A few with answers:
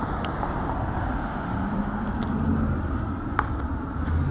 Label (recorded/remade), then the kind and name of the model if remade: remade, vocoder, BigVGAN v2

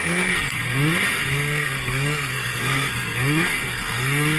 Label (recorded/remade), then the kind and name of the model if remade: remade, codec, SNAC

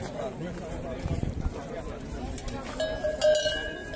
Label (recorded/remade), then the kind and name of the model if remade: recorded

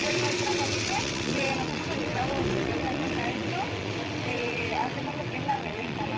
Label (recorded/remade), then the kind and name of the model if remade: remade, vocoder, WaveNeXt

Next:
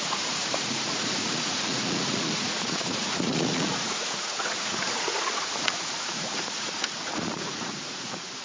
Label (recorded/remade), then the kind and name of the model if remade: remade, vocoder, Vocos